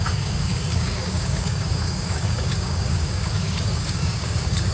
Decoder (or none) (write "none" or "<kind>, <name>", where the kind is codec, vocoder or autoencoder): codec, DAC